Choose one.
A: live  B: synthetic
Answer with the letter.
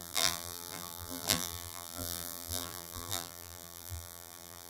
B